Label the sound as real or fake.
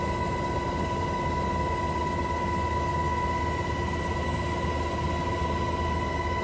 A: real